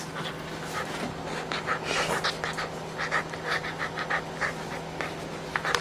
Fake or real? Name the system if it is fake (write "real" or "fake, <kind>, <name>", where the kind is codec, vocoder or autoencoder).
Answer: real